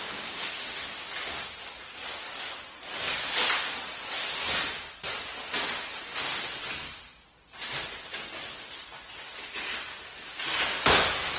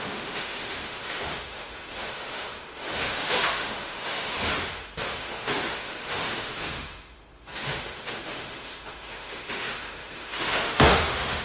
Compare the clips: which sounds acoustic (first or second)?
first